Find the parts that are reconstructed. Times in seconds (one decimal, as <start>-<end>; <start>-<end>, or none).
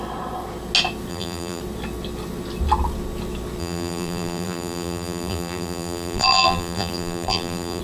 1.1-1.6; 3.6-7.8